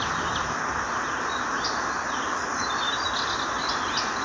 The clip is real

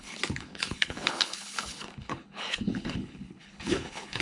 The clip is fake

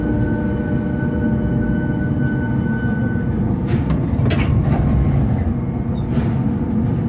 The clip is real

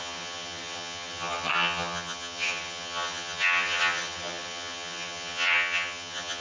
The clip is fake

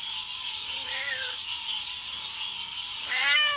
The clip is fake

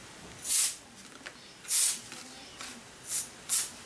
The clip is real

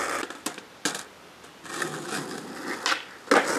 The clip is real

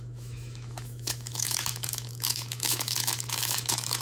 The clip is fake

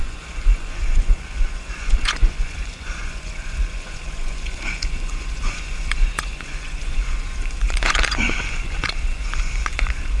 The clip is fake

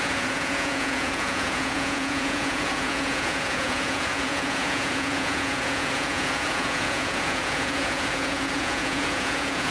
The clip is fake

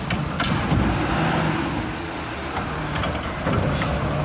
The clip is real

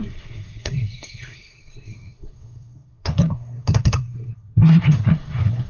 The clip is fake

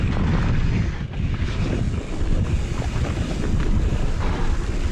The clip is real